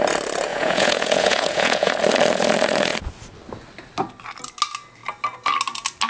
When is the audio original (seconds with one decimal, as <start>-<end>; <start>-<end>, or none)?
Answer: 0.0-0.5; 1.9-6.1